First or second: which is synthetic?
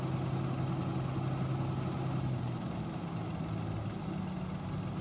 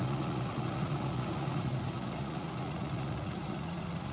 second